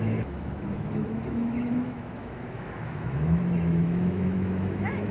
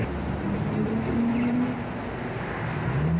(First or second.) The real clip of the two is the second